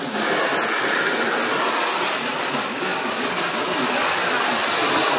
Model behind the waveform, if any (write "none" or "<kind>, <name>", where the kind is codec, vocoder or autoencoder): none